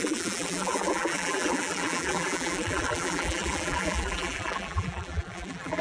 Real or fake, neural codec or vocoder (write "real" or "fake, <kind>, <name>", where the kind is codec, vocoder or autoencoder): fake, vocoder, BigVGAN v2